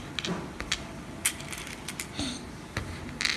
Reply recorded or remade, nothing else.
recorded